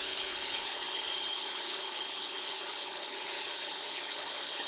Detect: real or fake fake